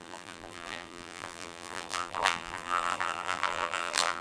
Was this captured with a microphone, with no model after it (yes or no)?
no